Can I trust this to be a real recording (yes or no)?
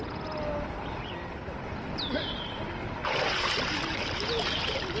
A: yes